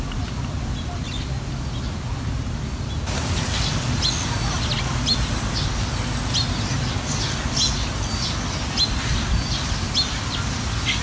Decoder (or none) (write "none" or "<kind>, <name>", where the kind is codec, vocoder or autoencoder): none